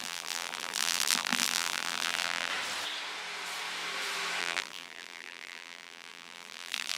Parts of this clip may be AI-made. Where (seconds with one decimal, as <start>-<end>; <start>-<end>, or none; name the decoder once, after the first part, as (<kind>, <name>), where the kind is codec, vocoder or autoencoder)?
0.0-2.5 (vocoder, BigVGAN v2); 4.4-7.0